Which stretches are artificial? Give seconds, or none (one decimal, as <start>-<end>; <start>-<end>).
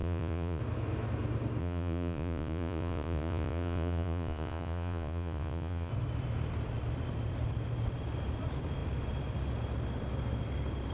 0.0-0.6; 1.6-5.9